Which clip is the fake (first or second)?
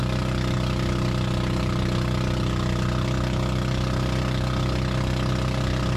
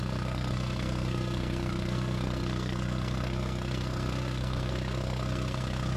second